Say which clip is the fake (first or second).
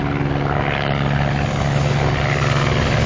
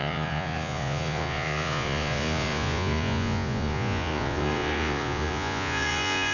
second